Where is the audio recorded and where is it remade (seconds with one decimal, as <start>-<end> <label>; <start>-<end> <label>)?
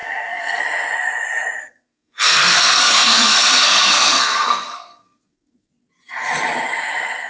0.0-0.6 remade; 0.6-1.6 recorded; 1.6-5.7 remade; 5.7-7.3 recorded